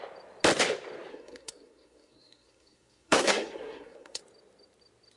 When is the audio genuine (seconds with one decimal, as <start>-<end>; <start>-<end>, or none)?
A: 0.0-1.1; 4.2-5.2

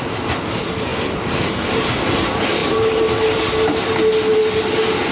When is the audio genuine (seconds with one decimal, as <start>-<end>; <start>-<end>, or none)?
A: 0.0-5.1